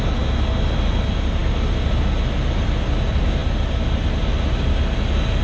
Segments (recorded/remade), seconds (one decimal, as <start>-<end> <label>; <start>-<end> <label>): 0.0-5.4 recorded

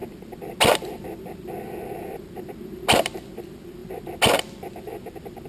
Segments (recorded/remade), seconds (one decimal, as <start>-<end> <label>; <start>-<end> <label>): 0.0-5.5 recorded

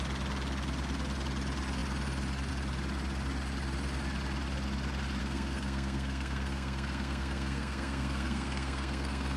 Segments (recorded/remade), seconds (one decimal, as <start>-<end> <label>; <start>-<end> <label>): 0.0-5.2 recorded; 5.2-9.4 remade

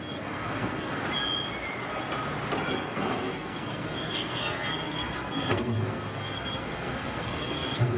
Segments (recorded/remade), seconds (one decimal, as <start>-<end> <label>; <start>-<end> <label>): 0.0-1.0 remade; 1.0-2.7 recorded; 2.7-8.0 remade

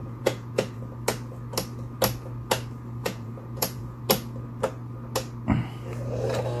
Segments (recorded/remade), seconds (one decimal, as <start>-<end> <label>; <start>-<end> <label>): 0.0-0.8 remade; 0.8-3.0 recorded; 3.0-4.0 remade; 4.0-6.6 recorded